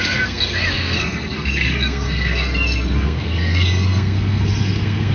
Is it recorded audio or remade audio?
remade